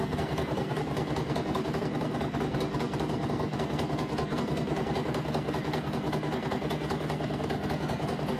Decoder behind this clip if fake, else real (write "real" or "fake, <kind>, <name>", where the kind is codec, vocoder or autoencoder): fake, codec, SNAC